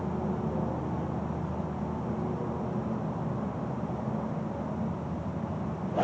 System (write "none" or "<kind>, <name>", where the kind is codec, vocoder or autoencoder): none